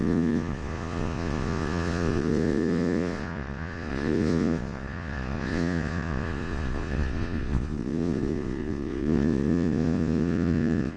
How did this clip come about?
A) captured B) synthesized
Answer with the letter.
B